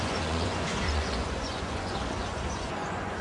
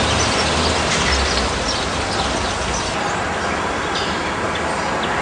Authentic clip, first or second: second